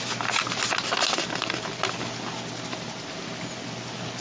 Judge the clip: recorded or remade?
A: recorded